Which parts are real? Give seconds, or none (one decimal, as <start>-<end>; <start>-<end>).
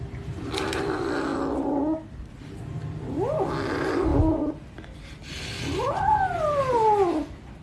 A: 0.0-7.6